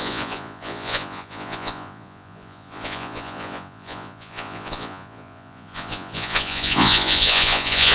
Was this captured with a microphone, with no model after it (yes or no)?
no